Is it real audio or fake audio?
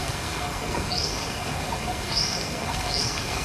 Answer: fake